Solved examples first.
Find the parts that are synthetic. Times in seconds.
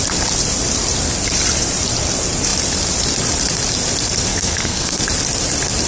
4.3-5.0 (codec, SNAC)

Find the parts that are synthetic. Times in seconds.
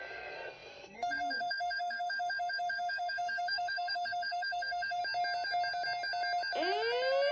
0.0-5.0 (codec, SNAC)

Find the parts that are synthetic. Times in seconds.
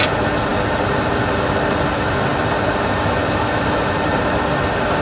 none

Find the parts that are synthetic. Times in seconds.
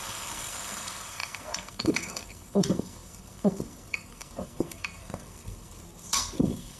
0.0-6.8 (codec, SNAC)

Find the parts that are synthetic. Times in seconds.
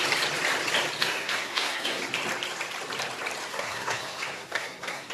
1.0-2.0 (codec, SNAC); 3.5-5.1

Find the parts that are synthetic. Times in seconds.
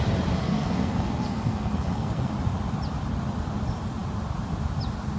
0.4-2.3 (codec, SNAC)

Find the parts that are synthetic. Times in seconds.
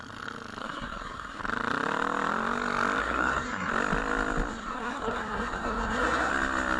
0.6-1.4 (codec, SNAC); 3.0-3.7; 4.5-6.3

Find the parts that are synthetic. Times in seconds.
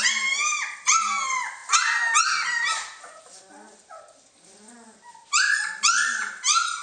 none